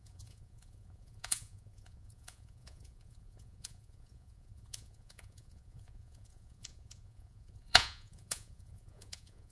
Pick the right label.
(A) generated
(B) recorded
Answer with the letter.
A